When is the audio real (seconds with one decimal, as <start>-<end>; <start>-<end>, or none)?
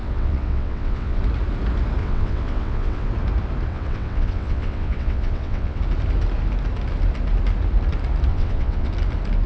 1.2-2.0; 3.1-3.7; 5.8-8.3; 8.9-9.5